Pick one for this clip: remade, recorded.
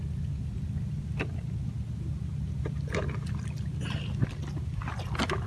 recorded